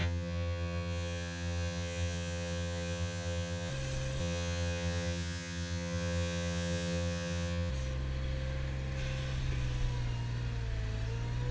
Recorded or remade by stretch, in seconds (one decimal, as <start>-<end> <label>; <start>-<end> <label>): 0.0-3.7 remade; 3.7-4.2 recorded; 4.2-7.7 remade; 7.7-11.5 recorded

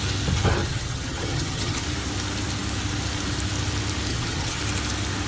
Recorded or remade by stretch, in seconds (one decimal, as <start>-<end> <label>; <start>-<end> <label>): 0.0-0.6 recorded; 0.6-1.8 remade; 1.8-4.1 recorded; 4.1-4.6 remade; 4.6-5.3 recorded

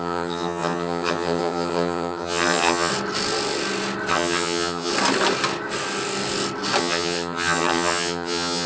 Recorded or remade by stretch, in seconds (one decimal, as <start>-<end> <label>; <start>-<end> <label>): 0.0-2.9 remade; 2.9-4.1 recorded; 4.1-4.9 remade; 4.9-6.8 recorded; 6.8-8.7 remade

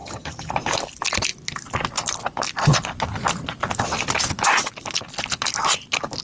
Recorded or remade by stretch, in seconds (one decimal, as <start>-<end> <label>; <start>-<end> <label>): 0.0-0.5 remade; 0.5-6.2 recorded

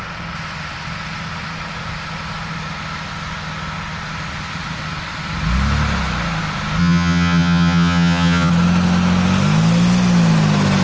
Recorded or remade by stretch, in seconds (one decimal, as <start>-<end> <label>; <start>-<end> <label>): 0.0-6.8 recorded; 6.8-8.5 remade; 8.5-10.8 recorded